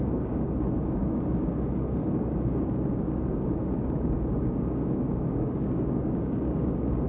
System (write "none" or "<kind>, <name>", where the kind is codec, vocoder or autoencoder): codec, DAC